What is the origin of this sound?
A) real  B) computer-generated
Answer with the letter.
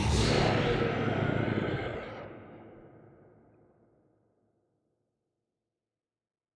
A